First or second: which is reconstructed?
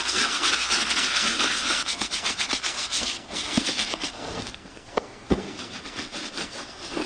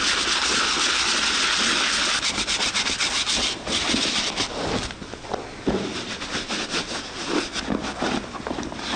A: first